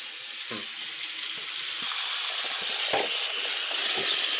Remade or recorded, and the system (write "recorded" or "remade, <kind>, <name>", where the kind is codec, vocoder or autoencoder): recorded